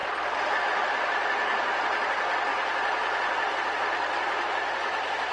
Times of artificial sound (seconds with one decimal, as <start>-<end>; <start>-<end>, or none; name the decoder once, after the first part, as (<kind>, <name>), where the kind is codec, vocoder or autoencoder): none